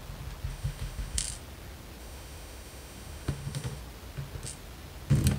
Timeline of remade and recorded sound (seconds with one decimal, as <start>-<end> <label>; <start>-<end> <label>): 0.0-0.5 recorded; 0.5-1.2 remade; 1.2-2.0 recorded; 2.0-3.8 remade; 3.8-5.4 recorded